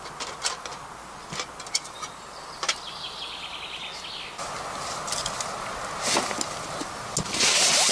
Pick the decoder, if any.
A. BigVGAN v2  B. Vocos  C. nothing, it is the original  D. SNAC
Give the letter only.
C